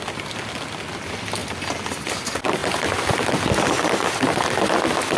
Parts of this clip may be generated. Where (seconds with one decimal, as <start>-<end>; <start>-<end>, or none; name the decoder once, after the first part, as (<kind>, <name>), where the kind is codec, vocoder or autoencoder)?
none